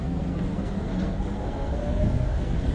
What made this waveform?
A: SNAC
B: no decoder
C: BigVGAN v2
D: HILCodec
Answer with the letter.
A